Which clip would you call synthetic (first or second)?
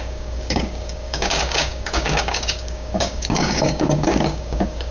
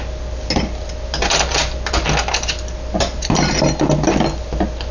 first